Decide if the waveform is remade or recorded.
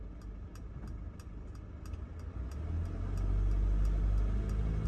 recorded